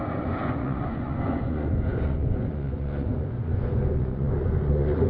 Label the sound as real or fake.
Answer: fake